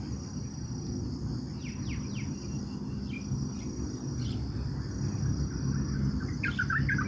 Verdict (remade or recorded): recorded